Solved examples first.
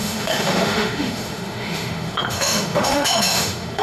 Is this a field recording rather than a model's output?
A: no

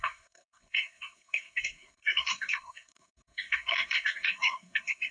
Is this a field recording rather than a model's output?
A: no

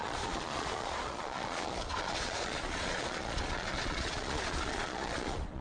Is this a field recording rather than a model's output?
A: no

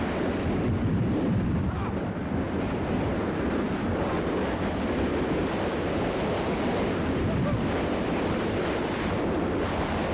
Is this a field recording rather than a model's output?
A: no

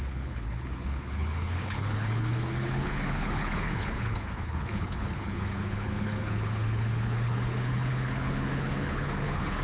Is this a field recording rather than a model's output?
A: no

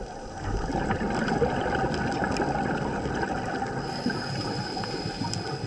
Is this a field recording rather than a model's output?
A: yes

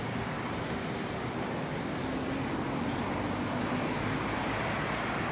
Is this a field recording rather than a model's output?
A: yes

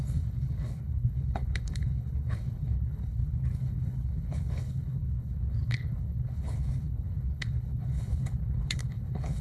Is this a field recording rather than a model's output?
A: no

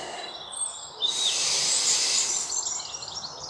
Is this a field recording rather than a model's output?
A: no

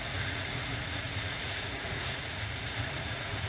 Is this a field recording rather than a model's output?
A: no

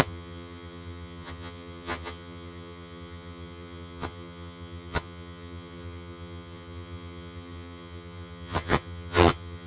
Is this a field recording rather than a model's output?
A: no